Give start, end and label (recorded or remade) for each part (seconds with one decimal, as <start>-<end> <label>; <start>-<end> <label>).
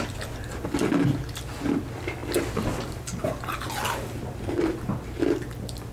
0.0-5.9 recorded